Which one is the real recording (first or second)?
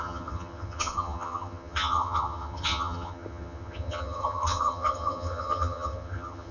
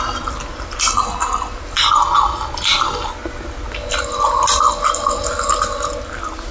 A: second